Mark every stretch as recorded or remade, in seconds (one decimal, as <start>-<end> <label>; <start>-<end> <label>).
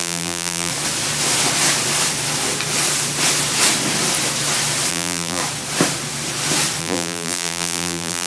0.0-0.7 remade; 0.7-4.9 recorded; 4.9-5.4 remade; 5.4-6.8 recorded; 6.8-8.3 remade